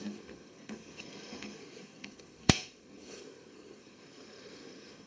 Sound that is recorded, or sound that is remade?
remade